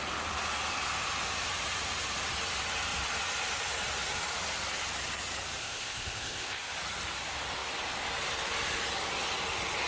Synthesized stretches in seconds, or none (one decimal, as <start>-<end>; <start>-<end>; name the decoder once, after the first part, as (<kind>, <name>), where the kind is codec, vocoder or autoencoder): 5.6-6.7 (codec, ZipCodec)